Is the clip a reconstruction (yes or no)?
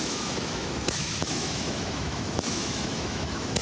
yes